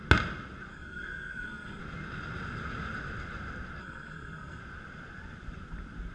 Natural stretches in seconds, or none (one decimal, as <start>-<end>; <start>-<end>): 0.0-0.7; 1.8-3.8; 4.6-6.1